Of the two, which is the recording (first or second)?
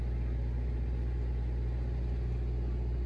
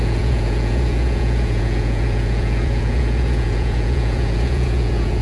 first